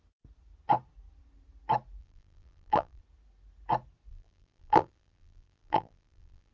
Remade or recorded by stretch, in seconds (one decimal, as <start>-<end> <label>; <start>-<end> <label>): 0.0-2.0 recorded; 2.0-3.0 remade; 3.0-4.1 recorded; 4.1-6.5 remade